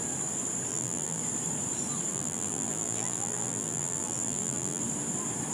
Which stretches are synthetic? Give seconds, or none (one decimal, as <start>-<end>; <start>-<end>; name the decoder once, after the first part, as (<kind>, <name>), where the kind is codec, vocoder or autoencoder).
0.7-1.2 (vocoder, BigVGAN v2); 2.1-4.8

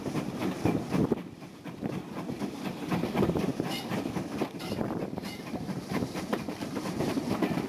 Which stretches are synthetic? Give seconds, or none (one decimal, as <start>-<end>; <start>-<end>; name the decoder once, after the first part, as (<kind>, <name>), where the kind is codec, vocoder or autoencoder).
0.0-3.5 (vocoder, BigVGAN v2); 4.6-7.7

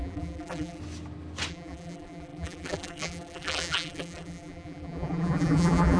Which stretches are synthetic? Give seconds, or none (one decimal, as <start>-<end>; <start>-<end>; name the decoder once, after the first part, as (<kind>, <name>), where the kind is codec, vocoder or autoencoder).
0.0-0.8 (vocoder, BigVGAN v2); 1.5-6.0

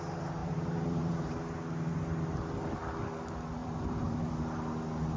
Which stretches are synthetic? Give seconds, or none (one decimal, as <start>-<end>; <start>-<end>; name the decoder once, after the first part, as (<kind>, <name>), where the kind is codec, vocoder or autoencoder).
0.4-1.3 (vocoder, BigVGAN v2); 3.6-4.3